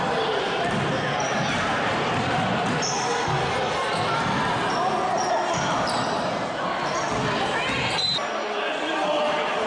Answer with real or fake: real